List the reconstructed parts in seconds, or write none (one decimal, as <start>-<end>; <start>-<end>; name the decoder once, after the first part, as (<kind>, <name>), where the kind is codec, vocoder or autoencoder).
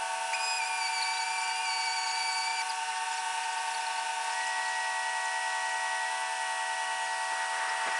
none